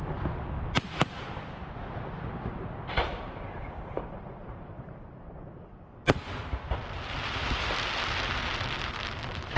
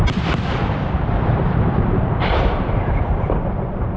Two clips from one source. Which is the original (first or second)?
first